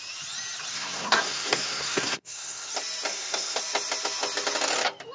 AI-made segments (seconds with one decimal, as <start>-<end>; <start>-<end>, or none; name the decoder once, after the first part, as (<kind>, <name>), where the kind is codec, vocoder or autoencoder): 0.7-2.7 (codec, SNAC); 3.1-3.6